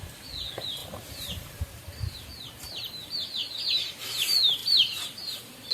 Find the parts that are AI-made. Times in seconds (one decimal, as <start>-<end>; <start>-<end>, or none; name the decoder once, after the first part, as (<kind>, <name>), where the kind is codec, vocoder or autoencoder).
0.8-3.9 (vocoder, BigVGAN v2); 4.6-5.7

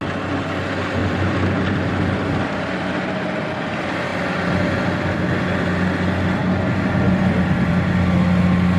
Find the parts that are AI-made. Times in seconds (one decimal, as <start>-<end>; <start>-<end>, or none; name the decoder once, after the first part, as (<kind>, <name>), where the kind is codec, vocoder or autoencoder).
1.0-1.9 (vocoder, BigVGAN v2)

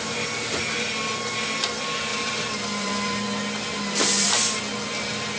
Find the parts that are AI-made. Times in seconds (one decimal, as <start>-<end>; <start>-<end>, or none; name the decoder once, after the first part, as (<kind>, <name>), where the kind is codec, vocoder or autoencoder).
2.1-4.6 (vocoder, BigVGAN v2)

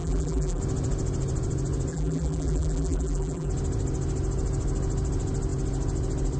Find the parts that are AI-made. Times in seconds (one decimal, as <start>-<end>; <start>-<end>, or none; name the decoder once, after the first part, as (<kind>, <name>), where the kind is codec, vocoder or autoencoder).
0.0-0.6 (vocoder, BigVGAN v2); 1.9-3.5